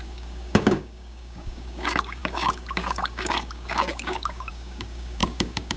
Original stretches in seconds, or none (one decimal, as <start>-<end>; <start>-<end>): none